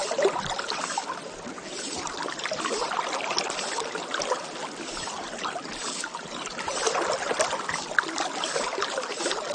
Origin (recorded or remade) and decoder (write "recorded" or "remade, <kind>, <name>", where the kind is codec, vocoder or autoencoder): recorded